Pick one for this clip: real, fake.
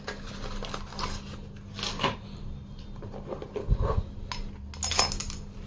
real